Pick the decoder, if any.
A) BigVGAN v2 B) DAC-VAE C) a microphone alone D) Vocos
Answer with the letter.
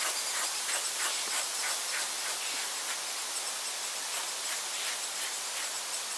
A